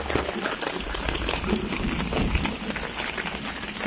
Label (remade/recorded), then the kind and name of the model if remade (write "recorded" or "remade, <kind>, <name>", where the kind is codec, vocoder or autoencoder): recorded